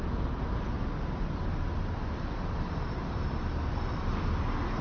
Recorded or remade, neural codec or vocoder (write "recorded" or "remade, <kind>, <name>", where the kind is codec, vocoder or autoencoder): recorded